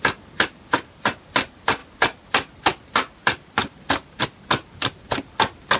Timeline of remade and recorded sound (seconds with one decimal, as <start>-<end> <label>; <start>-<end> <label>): 0.0-5.8 recorded